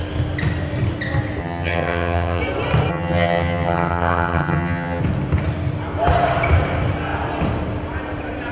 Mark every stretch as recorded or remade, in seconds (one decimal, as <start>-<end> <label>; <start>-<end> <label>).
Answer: 0.0-1.4 recorded; 1.4-2.4 remade; 2.4-2.9 recorded; 2.9-5.0 remade; 5.0-8.5 recorded